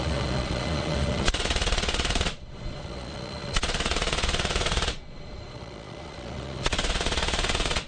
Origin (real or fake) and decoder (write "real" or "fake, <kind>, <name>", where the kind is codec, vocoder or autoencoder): fake, vocoder, Vocos